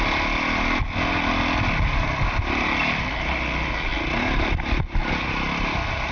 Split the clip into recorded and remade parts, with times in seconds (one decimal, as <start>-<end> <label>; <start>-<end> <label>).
0.0-6.1 recorded